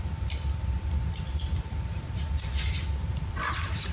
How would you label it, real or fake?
real